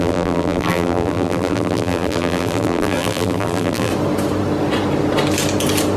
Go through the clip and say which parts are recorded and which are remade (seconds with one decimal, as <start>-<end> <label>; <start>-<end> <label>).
0.0-3.9 remade; 3.9-6.0 recorded

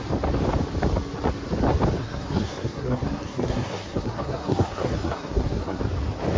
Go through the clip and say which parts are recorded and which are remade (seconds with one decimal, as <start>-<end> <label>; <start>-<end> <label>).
0.0-2.0 recorded; 2.0-5.8 remade; 5.8-6.4 recorded

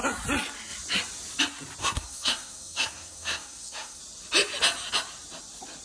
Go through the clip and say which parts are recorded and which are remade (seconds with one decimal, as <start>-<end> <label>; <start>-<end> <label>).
0.0-1.8 recorded; 1.8-4.0 remade; 4.0-5.8 recorded

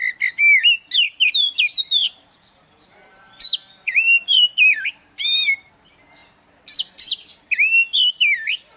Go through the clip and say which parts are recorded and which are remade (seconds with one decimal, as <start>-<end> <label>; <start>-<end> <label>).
0.0-2.0 recorded; 2.0-5.7 remade; 5.7-8.8 recorded

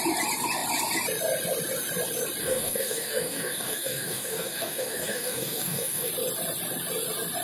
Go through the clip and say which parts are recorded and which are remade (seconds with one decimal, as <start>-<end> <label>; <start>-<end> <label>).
0.0-2.4 recorded; 2.4-6.1 remade; 6.1-7.4 recorded

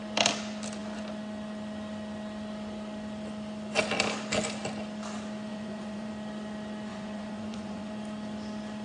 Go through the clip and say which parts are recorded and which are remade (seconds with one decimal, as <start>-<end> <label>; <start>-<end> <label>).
0.0-5.5 recorded; 5.5-6.1 remade; 6.1-6.9 recorded; 6.9-7.9 remade; 7.9-8.8 recorded